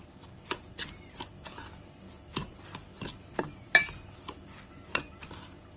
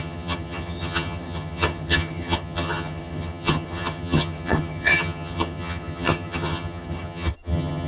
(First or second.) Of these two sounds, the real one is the first